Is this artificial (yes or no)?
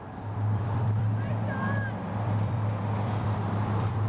yes